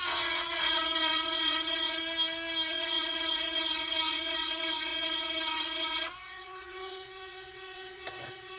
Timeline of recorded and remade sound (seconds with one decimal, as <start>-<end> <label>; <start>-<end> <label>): 0.0-2.0 remade; 2.0-2.7 recorded; 2.7-8.6 remade